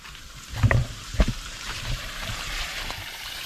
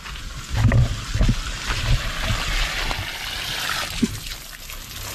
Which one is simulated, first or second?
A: first